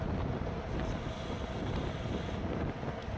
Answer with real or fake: real